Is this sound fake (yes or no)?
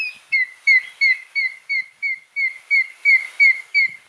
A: no